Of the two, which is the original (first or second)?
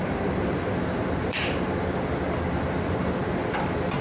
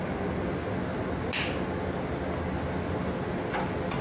second